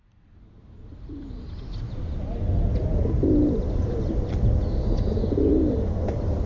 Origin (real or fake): real